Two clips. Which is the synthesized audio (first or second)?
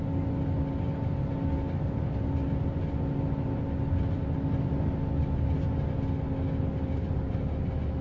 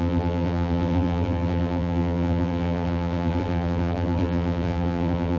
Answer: second